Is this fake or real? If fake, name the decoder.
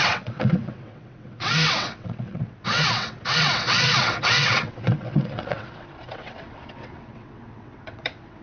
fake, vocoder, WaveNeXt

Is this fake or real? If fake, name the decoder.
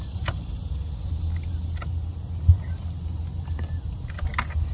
real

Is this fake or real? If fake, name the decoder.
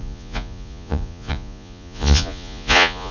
fake, vocoder, Vocos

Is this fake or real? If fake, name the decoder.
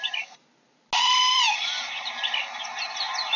real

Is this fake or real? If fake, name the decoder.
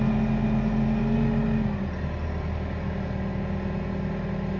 real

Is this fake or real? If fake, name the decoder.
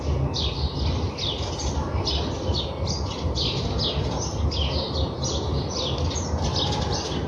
real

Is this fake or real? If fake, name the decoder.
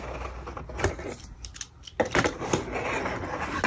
real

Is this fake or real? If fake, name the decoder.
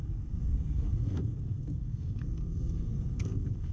fake, codec, SNAC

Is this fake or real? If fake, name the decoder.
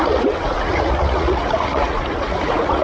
fake, vocoder, Vocos